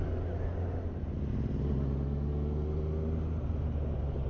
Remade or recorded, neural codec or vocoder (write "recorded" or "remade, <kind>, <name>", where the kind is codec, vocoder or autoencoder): recorded